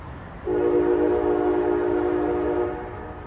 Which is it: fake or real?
real